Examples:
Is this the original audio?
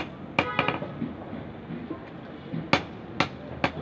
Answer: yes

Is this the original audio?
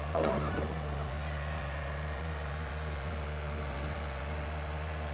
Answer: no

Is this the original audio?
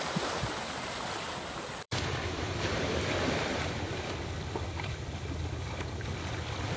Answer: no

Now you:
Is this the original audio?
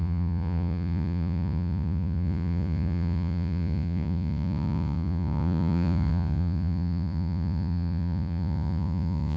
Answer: no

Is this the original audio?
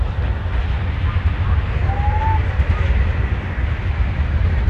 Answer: yes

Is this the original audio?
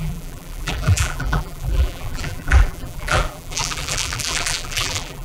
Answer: no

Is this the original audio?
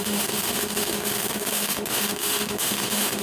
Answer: no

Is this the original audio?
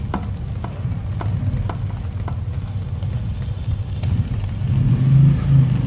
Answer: yes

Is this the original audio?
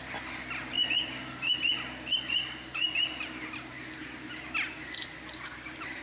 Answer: yes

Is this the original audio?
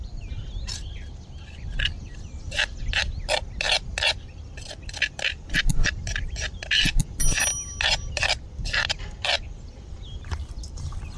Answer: yes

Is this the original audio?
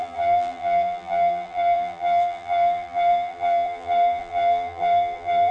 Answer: no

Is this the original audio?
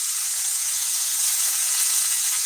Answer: no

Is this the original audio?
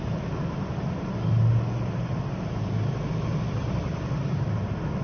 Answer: yes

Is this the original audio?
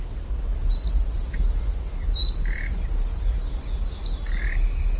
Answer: yes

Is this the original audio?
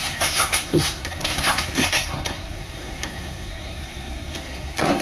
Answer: no